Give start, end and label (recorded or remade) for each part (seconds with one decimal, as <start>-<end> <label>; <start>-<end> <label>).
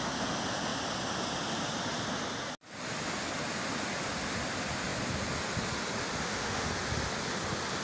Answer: 0.0-6.2 recorded; 6.2-6.7 remade; 6.7-7.8 recorded